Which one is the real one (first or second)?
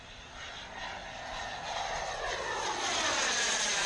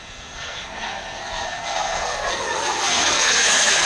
first